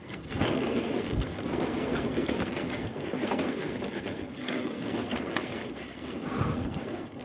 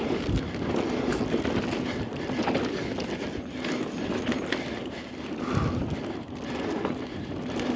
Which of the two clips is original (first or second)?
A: second